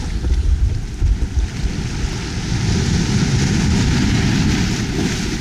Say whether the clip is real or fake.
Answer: real